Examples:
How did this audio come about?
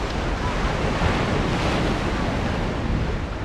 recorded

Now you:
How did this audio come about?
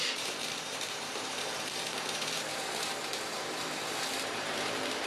remade